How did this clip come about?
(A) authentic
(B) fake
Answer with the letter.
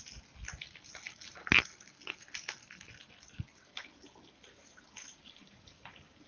A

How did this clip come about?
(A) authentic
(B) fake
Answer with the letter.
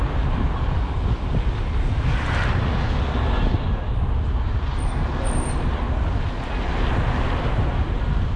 A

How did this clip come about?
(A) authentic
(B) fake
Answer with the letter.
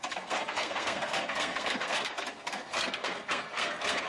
B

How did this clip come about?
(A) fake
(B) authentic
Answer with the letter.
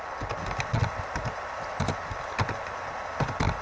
B